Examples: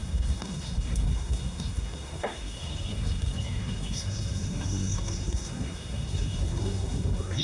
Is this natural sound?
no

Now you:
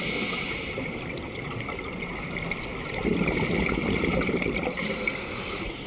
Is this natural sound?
yes